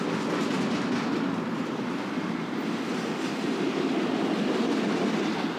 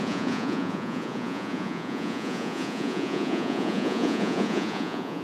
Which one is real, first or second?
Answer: first